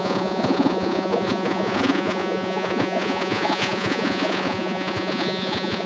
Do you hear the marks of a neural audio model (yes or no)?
yes